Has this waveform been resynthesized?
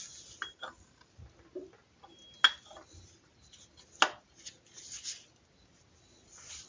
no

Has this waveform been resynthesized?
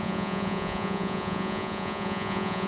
yes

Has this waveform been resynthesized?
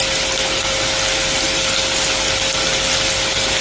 no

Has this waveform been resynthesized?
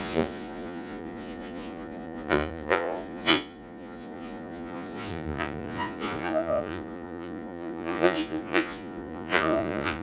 yes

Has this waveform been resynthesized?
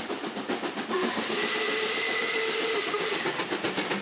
no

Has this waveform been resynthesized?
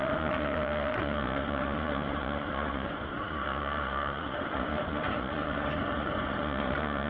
yes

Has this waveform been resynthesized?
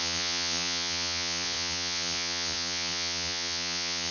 yes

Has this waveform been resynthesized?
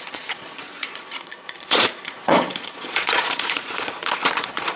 yes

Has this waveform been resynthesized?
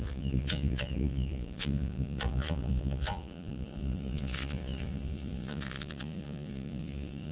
yes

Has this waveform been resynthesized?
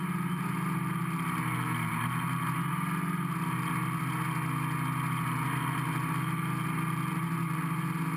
no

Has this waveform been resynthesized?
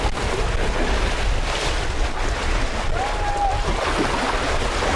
no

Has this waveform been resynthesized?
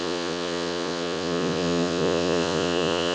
yes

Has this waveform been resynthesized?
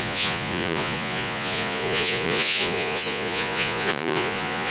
yes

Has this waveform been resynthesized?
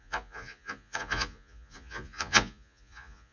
yes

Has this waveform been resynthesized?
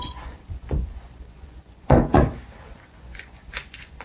yes